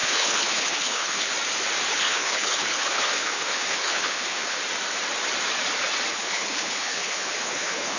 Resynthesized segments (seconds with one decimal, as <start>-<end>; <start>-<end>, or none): 0.0-1.3; 1.9-4.6; 6.1-8.0